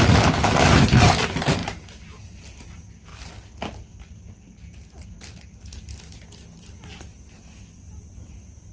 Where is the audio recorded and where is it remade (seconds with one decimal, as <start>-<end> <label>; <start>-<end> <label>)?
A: 0.0-8.7 recorded